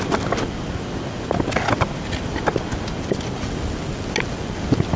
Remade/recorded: recorded